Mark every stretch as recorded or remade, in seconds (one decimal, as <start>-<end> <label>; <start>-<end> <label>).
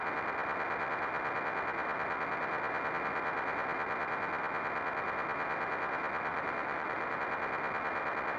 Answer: 0.0-6.3 recorded; 6.3-7.2 remade; 7.2-8.4 recorded